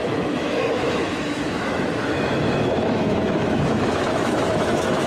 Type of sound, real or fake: fake